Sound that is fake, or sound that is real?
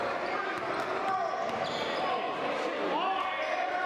real